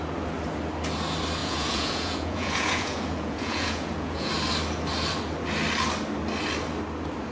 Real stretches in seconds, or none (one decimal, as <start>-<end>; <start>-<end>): 0.0-1.4; 4.3-7.3